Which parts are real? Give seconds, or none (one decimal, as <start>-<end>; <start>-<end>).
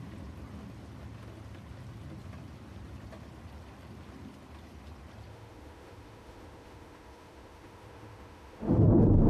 0.0-5.3; 8.9-9.3